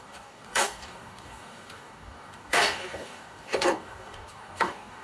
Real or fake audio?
fake